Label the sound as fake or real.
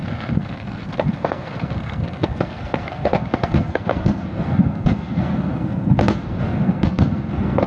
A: fake